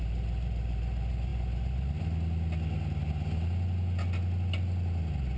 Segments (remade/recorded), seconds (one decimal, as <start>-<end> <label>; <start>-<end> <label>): 0.0-5.4 recorded